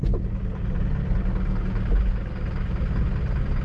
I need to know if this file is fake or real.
real